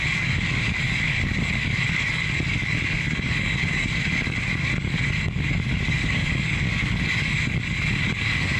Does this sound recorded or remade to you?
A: remade